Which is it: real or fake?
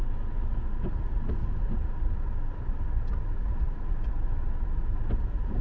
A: real